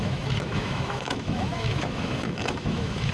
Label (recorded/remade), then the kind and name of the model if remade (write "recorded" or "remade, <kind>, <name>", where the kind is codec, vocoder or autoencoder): remade, autoencoder, DAC-VAE